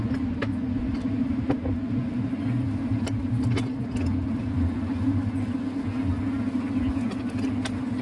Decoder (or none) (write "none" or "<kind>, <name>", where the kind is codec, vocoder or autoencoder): none